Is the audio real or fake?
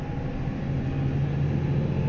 real